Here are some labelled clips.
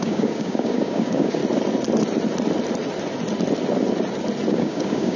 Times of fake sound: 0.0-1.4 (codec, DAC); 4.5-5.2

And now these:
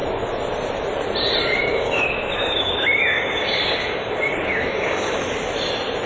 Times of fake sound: 1.5-5.2 (codec, DAC)

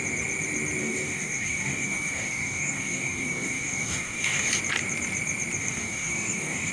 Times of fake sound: 0.8-4.6 (codec, DAC); 5.6-6.7

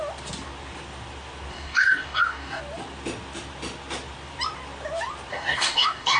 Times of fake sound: 1.5-2.6 (codec, DAC); 5.3-6.2

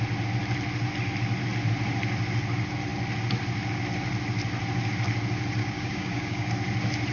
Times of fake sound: 5.6-6.5 (codec, DAC)

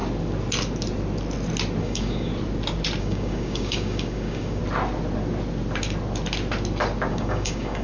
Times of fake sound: 1.8-2.3 (codec, DAC); 3.0-4.6; 7.1-7.8

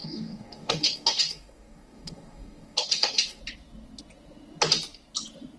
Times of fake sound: 0.0-3.4 (codec, DAC)

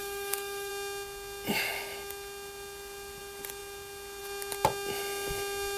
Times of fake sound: 0.0-0.7 (codec, DAC)